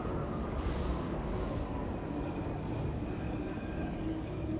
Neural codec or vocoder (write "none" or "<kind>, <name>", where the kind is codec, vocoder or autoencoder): codec, DAC